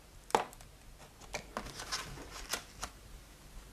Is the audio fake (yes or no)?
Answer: no